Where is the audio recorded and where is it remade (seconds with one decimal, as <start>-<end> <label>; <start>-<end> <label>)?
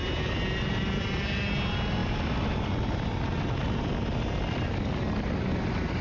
0.0-2.0 recorded; 2.0-2.7 remade; 2.7-6.0 recorded